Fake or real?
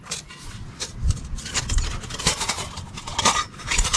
fake